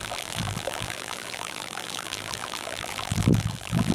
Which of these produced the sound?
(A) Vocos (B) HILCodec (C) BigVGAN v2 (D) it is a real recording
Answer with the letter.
C